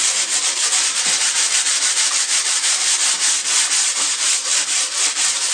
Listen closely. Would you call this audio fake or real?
fake